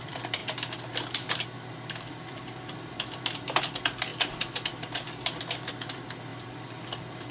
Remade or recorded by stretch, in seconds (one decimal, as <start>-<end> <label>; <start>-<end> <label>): 0.0-0.4 remade; 0.4-2.1 recorded; 2.1-4.1 remade; 4.1-5.4 recorded; 5.4-6.3 remade; 6.3-6.8 recorded; 6.8-7.3 remade